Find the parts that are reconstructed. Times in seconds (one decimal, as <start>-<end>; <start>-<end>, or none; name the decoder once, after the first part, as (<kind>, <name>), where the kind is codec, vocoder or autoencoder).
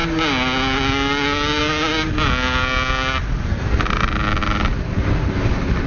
4.4-5.1 (vocoder, BigVGAN v2)